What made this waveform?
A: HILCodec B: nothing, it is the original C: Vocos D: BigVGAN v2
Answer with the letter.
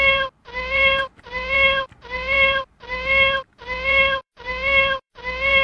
D